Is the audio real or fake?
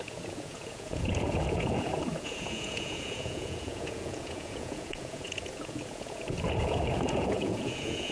fake